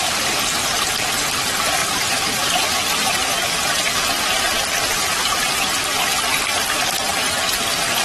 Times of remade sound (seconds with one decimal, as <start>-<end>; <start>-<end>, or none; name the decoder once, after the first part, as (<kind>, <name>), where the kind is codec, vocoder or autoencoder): 1.8-6.1 (vocoder, BigVGAN v2)